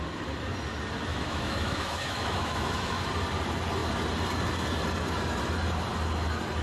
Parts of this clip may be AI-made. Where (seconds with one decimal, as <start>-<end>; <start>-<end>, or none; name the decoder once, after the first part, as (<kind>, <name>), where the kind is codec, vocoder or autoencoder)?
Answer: 1.1-3.1 (autoencoder, DAC-VAE)